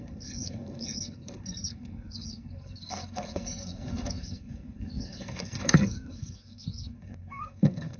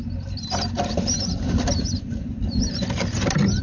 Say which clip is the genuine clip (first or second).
second